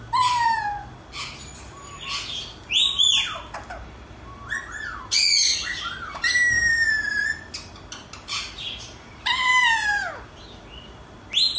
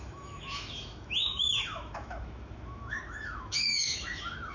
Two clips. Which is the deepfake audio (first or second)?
second